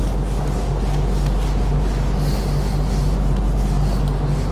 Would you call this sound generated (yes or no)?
no